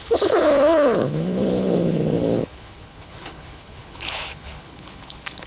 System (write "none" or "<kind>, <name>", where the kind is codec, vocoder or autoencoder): codec, HILCodec